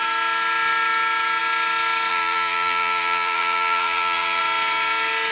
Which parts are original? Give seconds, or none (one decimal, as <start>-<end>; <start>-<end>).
0.0-2.1; 4.4-5.3